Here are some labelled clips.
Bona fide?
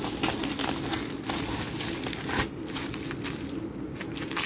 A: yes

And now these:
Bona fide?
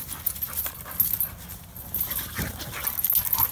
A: yes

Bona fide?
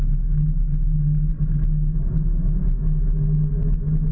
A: yes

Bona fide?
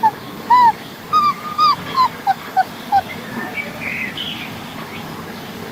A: no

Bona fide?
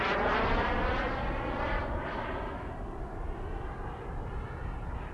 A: yes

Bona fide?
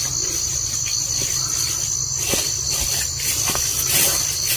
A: yes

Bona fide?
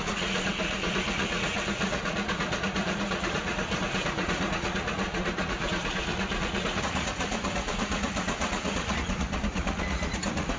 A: no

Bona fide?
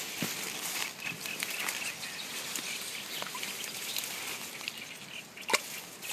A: yes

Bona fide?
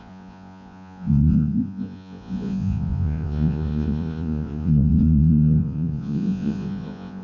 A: no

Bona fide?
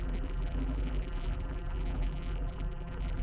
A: no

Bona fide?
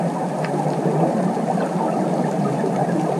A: yes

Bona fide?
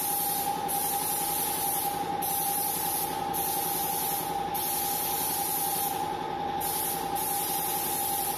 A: yes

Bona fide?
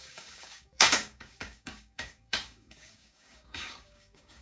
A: no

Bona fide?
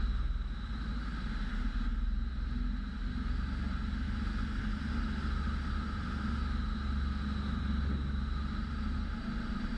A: yes